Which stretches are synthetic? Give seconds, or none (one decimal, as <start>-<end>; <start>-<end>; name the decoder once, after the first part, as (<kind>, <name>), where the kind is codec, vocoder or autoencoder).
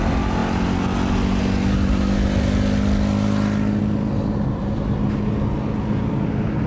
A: none